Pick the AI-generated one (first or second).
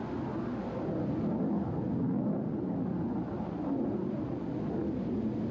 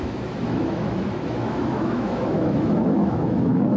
second